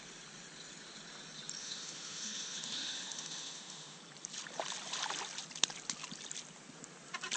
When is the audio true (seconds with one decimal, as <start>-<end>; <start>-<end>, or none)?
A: 0.0-1.6; 4.0-7.4